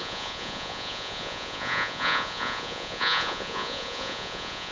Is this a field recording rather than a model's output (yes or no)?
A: no